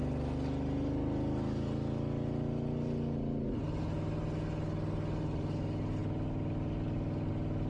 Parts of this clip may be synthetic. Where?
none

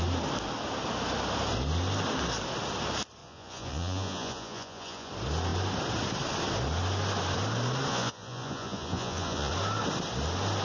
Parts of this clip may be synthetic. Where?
3.2-5.1 (vocoder, Vocos); 7.9-9.5

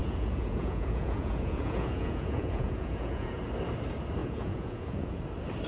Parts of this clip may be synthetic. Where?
0.0-3.4 (vocoder, Vocos); 4.2-5.2

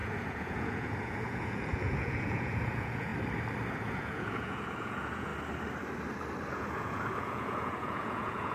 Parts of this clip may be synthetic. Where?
0.0-3.1 (vocoder, Vocos); 3.7-5.3; 6.5-8.5